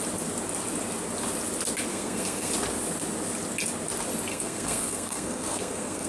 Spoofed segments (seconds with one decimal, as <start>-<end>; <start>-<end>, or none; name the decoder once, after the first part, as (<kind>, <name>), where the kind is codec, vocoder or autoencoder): 1.9-2.5 (codec, SNAC); 4.3-6.1